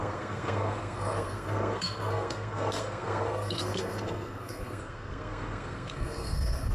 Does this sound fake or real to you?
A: fake